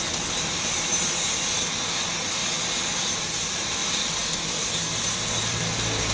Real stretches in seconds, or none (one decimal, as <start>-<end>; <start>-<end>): 0.0-6.1